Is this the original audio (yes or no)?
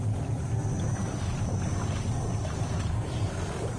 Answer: yes